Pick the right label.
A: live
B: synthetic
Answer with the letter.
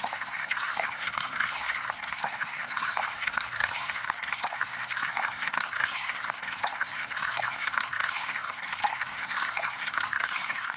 B